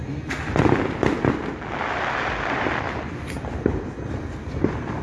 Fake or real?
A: real